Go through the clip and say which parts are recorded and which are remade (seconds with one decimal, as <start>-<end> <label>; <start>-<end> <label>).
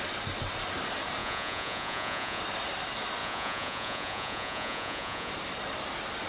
0.0-1.2 recorded; 1.2-2.4 remade; 2.4-3.2 recorded; 3.2-5.3 remade; 5.3-6.3 recorded